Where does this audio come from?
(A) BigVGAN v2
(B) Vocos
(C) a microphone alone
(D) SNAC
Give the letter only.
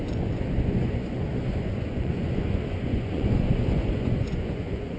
B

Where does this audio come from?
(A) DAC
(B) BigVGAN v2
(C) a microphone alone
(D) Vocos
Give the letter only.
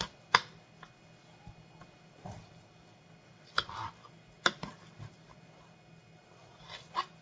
C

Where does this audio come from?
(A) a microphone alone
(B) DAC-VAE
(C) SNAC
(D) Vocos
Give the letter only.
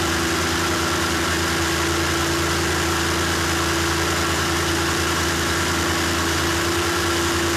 A